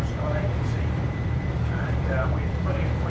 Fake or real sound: fake